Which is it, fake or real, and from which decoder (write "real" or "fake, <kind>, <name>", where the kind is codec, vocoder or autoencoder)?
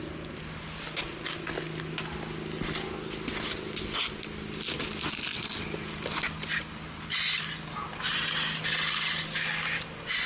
real